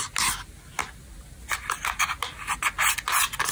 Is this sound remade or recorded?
recorded